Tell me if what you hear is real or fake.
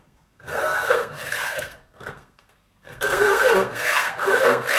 fake